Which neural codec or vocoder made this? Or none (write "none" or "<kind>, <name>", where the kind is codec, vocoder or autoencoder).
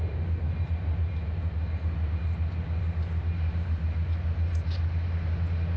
none